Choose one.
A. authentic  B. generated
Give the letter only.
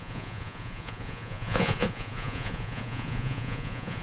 B